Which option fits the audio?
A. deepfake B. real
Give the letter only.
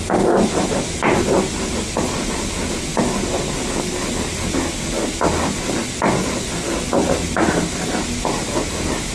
B